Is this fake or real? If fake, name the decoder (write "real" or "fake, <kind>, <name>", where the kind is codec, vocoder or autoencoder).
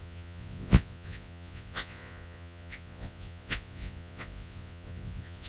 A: fake, vocoder, Vocos